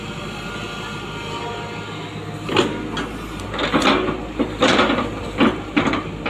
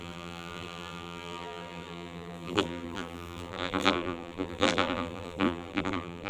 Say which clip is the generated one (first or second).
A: second